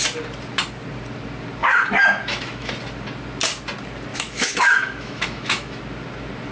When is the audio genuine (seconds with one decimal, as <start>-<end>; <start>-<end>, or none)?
0.0-1.6; 2.7-4.1; 5.8-6.5